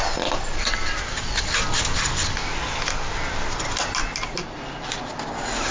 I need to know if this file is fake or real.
real